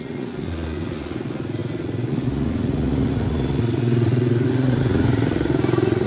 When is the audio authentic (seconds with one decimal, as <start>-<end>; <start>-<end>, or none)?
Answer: none